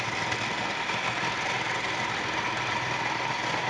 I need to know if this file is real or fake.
real